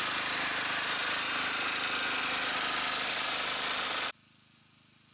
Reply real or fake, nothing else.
real